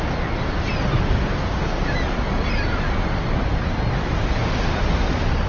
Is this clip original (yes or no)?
yes